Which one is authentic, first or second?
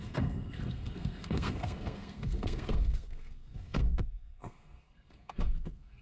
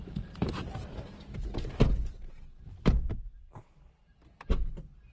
second